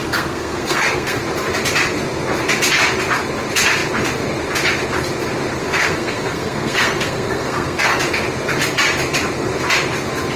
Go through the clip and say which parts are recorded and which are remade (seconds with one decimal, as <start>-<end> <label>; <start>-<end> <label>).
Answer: 0.0-1.2 remade; 1.2-5.6 recorded; 5.6-8.0 remade; 8.0-10.4 recorded